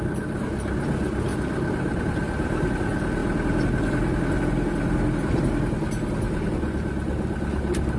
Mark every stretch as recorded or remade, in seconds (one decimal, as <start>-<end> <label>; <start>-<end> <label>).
0.0-8.0 recorded